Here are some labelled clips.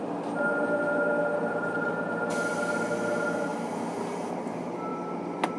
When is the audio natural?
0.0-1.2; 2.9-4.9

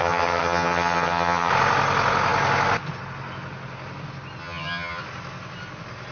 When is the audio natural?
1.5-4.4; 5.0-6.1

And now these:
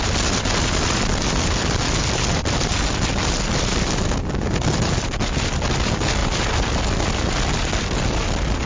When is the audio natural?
0.0-8.7

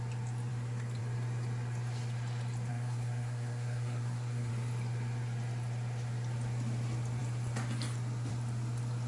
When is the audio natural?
0.0-2.7; 4.5-9.1

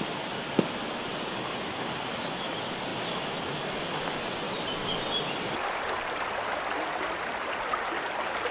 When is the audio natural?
0.0-8.5